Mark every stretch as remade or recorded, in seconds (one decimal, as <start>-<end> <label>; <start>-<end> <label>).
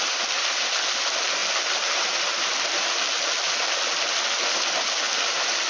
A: 0.0-5.7 recorded